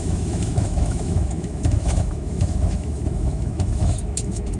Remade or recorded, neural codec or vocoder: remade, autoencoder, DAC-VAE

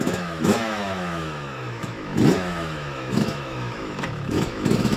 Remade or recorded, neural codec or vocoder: remade, autoencoder, DAC-VAE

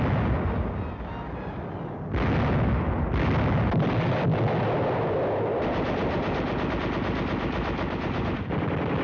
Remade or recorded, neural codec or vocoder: recorded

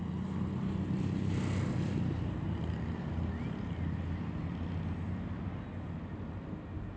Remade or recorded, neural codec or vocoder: recorded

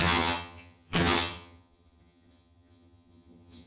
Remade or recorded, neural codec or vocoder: remade, vocoder, HiFi-GAN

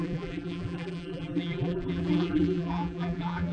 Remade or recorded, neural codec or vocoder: remade, vocoder, BigVGAN v2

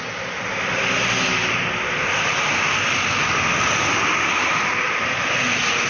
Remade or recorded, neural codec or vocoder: recorded